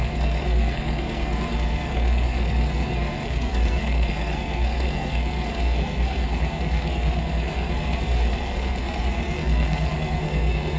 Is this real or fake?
fake